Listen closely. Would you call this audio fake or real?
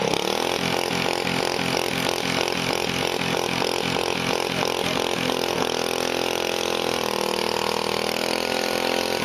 real